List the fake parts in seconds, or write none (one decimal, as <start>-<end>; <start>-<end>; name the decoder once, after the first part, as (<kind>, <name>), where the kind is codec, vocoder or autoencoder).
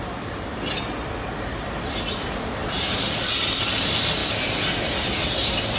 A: none